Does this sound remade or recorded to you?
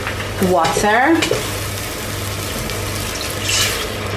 recorded